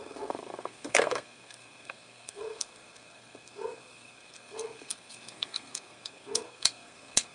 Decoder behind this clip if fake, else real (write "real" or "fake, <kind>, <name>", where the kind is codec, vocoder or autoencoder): fake, codec, SNAC